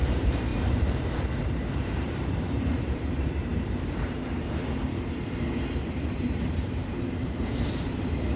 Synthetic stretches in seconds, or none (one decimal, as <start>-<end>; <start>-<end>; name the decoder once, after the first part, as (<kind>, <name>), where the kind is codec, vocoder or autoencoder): 0.0-8.4 (vocoder, BigVGAN v2)